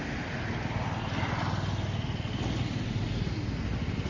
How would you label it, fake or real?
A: real